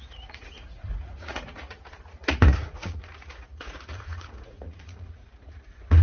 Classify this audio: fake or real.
fake